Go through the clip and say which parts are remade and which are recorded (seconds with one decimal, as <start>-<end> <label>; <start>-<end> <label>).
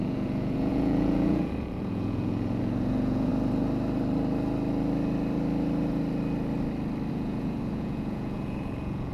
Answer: 0.0-3.3 remade; 3.3-7.1 recorded; 7.1-9.1 remade